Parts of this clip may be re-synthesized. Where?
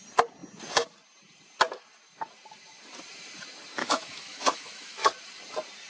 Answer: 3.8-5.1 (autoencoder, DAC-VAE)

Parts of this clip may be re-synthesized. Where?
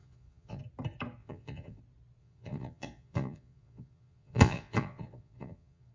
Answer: 0.0-0.6 (vocoder, Vocos); 1.2-1.8; 2.2-5.9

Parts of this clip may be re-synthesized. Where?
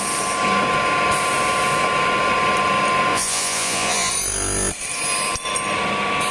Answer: 3.1-4.1 (vocoder, Vocos)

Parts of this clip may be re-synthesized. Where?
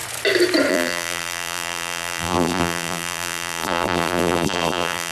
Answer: 0.7-5.1 (vocoder, BigVGAN v2)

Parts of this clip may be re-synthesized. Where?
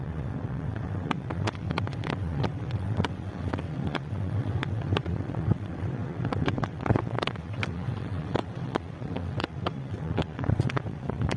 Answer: 0.0-11.4 (vocoder, WaveNeXt)